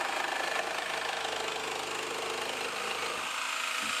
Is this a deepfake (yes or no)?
no